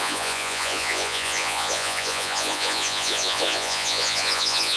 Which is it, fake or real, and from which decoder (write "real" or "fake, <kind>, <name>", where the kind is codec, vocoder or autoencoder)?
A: fake, vocoder, Vocos